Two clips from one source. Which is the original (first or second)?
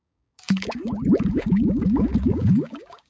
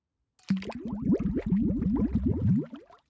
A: second